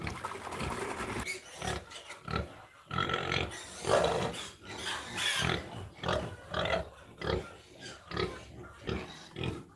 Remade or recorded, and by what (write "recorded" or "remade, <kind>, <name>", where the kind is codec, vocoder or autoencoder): recorded